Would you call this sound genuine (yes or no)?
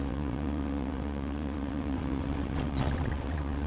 no